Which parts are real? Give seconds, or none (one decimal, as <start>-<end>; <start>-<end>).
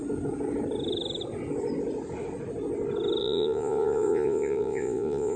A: 0.0-3.2